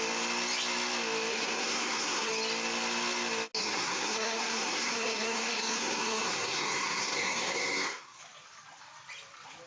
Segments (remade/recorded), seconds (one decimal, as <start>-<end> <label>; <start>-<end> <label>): 0.0-1.3 recorded; 1.3-2.3 remade; 2.3-3.6 recorded; 3.6-8.2 remade; 8.2-9.7 recorded